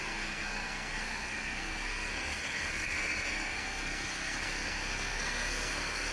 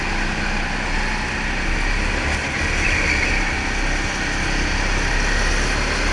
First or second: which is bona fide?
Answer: second